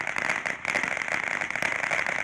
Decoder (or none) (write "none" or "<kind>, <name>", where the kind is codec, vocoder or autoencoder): none